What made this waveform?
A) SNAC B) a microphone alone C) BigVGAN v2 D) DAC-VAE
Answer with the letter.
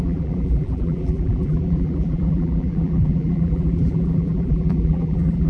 C